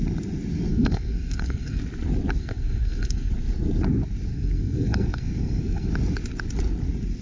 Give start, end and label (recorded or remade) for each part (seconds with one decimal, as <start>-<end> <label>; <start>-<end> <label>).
0.0-0.7 recorded; 0.7-1.8 remade; 1.8-2.4 recorded; 2.4-3.3 remade; 3.3-4.3 recorded; 4.3-5.9 remade; 5.9-7.2 recorded